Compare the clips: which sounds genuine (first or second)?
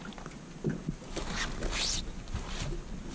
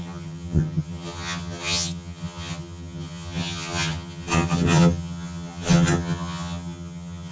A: first